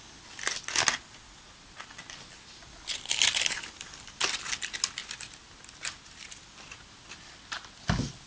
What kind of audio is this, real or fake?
real